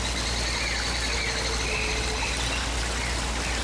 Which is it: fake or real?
fake